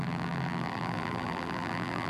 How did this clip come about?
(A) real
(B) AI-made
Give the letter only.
B